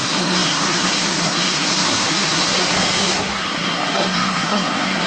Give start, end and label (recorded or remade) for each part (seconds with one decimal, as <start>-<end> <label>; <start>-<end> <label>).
0.0-5.1 remade